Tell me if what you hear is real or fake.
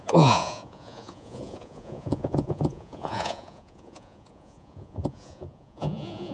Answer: fake